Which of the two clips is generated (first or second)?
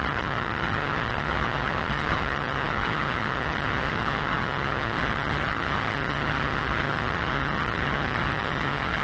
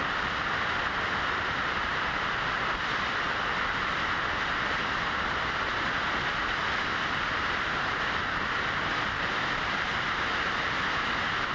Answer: first